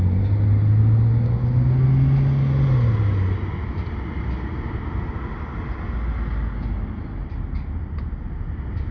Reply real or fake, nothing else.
real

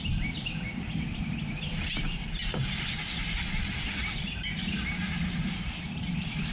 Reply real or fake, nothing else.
real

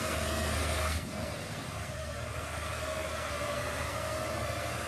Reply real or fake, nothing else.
fake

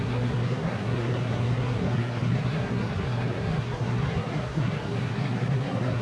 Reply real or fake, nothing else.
fake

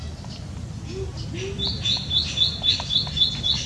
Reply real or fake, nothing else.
real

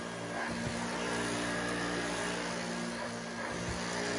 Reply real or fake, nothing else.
real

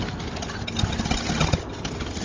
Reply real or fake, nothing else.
real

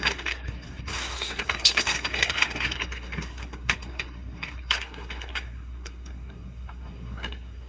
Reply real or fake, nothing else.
fake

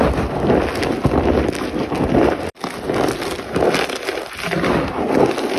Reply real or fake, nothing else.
real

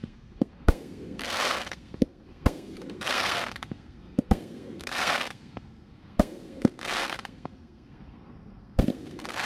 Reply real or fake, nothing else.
fake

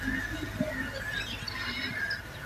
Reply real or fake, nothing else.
real